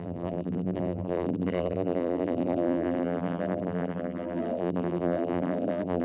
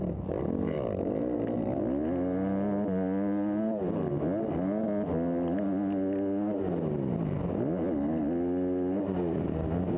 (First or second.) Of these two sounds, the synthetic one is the first